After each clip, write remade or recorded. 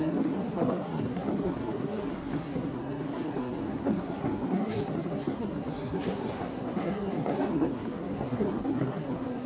remade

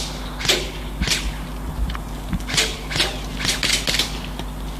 recorded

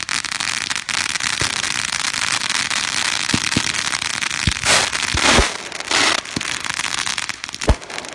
recorded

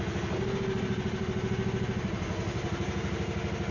recorded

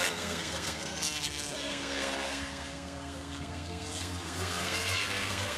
remade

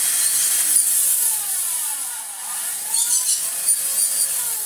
recorded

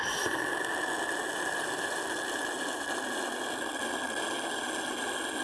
recorded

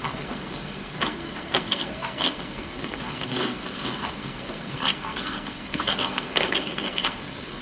remade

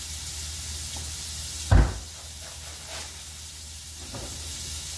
recorded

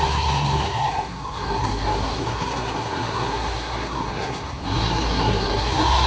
remade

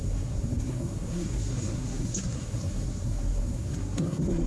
remade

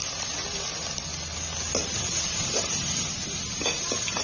recorded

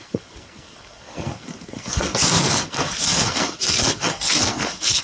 remade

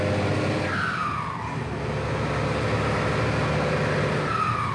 recorded